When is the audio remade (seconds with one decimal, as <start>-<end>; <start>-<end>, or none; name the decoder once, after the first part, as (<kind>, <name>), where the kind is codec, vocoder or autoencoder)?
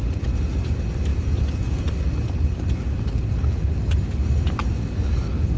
none